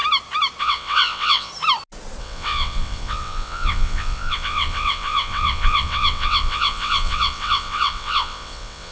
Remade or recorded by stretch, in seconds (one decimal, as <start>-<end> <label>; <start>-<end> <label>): 0.0-0.6 recorded; 0.6-1.5 remade; 1.5-2.2 recorded; 2.2-8.9 remade